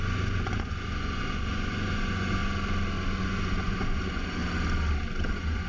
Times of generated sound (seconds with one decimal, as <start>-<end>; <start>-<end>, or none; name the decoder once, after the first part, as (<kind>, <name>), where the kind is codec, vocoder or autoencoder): 0.0-2.4 (vocoder, Vocos); 3.2-4.4; 5.3-5.7